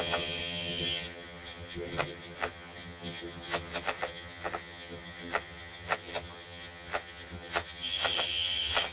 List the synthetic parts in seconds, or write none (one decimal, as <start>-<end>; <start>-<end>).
0.0-8.9